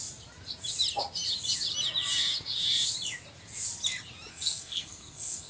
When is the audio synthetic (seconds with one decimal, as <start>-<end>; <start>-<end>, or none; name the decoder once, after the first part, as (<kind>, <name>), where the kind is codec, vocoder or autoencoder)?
4.3-5.5 (codec, SNAC)